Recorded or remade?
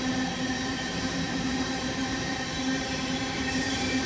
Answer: remade